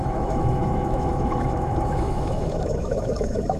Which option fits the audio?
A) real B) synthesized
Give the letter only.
B